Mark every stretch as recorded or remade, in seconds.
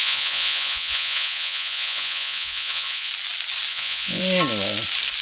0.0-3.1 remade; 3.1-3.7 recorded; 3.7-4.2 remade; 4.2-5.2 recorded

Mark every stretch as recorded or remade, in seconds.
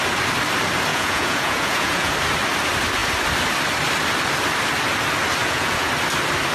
0.0-0.9 recorded; 0.9-2.1 remade; 2.1-5.4 recorded; 5.4-5.9 remade; 5.9-6.5 recorded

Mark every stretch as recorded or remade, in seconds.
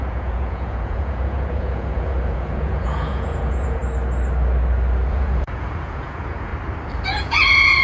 0.0-3.8 remade; 3.8-5.1 recorded; 5.1-6.5 remade; 6.5-7.2 recorded; 7.2-7.8 remade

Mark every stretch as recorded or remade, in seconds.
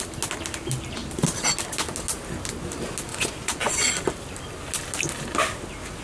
0.0-3.1 recorded; 3.1-3.9 remade; 3.9-6.0 recorded